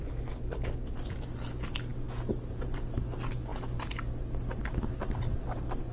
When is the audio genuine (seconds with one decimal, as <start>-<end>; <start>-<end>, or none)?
0.0-5.9